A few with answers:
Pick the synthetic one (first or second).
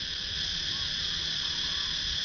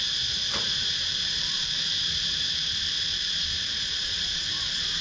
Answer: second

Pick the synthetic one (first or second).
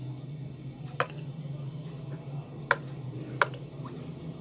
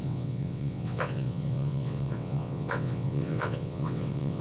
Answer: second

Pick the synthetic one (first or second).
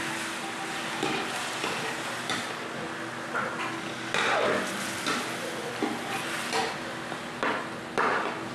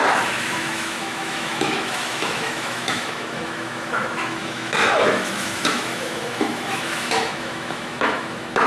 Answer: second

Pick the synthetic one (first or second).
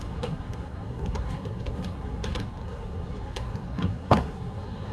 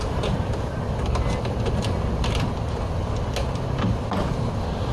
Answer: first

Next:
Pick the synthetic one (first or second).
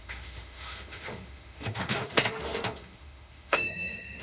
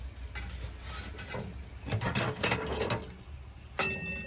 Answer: first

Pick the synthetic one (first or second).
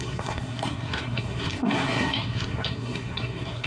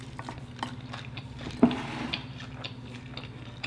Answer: first